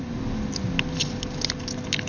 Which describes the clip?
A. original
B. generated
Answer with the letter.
A